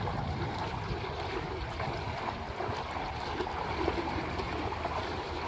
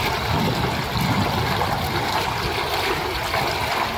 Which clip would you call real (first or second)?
second